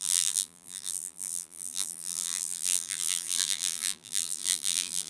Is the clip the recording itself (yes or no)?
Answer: no